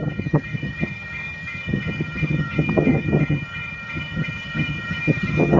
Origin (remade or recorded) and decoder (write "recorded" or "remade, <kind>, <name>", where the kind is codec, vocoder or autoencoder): remade, vocoder, HiFi-GAN